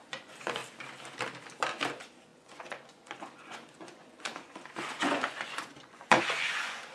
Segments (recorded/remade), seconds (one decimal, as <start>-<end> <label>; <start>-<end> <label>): 0.0-0.6 remade; 0.6-1.9 recorded; 1.9-6.9 remade